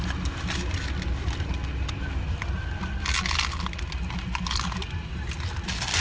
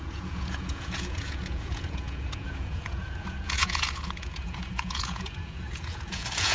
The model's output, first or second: second